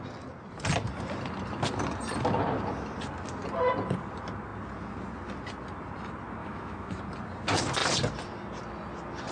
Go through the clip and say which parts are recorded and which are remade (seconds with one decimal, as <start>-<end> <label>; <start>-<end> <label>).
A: 0.0-6.4 recorded; 6.4-7.0 remade; 7.0-9.3 recorded